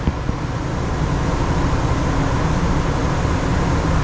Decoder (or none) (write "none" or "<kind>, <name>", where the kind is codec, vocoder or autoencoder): none